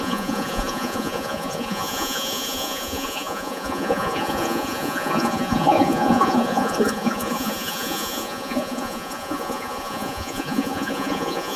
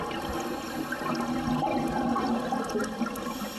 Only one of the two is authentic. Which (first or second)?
second